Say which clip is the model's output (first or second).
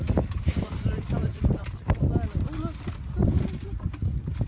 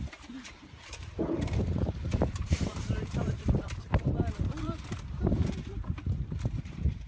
second